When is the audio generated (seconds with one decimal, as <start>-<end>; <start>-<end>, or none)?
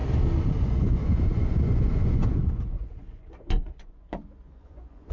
0.6-5.1